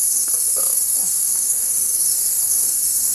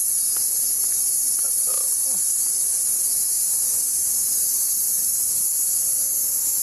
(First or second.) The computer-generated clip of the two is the first